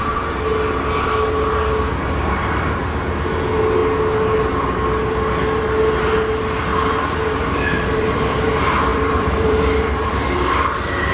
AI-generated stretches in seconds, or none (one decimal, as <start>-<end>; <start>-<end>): 6.7-8.5; 8.9-10.2